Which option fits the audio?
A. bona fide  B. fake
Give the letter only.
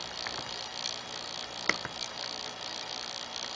A